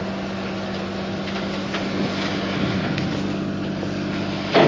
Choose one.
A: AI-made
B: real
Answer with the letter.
B